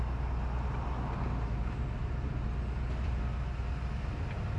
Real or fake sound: real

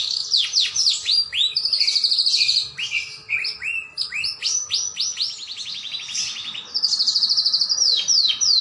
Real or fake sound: real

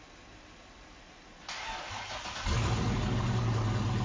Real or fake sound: real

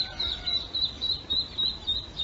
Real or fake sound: real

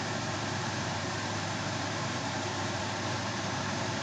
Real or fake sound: fake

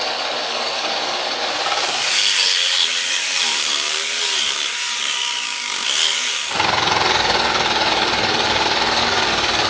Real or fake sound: fake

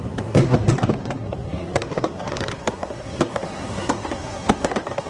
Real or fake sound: fake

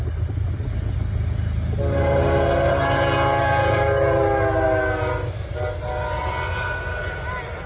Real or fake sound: real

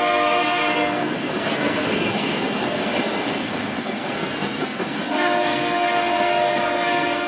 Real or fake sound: fake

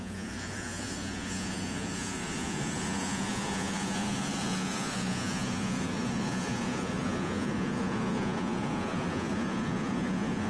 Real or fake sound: fake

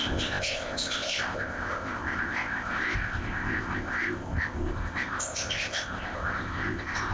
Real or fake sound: fake